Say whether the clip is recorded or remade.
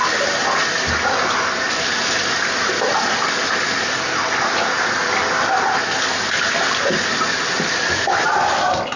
recorded